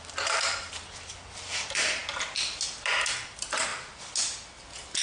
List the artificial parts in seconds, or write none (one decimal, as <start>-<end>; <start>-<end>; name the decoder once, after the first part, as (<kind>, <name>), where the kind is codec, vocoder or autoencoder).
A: 0.0-2.0 (vocoder, BigVGAN v2); 3.3-3.7

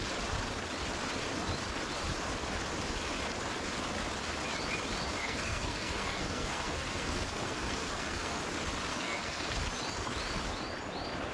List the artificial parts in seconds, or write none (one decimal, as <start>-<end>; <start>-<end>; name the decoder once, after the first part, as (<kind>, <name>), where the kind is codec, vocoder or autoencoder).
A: 5.2-8.4 (codec, SNAC); 8.9-9.6

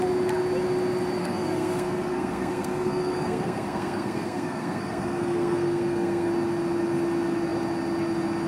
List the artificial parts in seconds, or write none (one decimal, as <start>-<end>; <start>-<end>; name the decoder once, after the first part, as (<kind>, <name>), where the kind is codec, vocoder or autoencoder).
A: 1.2-6.3 (codec, SNAC)

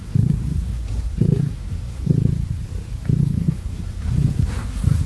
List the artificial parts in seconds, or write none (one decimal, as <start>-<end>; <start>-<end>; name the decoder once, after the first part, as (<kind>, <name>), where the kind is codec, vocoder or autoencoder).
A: 0.0-2.1 (codec, SNAC); 3.2-5.1

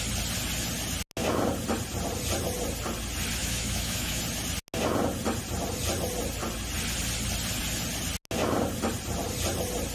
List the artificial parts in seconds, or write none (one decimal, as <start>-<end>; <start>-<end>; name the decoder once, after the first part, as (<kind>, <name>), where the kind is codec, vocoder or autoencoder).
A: 3.4-4.2 (autoencoder, DAC-VAE)

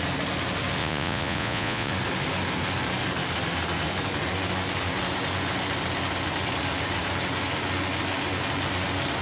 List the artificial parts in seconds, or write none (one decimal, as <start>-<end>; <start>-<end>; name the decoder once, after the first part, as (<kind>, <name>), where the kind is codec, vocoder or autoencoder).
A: 0.8-1.9 (vocoder, Vocos)

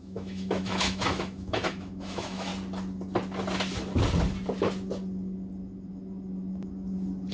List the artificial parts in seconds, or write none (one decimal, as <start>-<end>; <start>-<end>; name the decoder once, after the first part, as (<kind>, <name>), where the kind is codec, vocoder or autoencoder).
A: 0.0-2.5 (autoencoder, DAC-VAE)

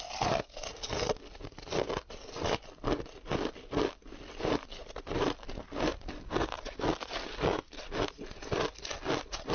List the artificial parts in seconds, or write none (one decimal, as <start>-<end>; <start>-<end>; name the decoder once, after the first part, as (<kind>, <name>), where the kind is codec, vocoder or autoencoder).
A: none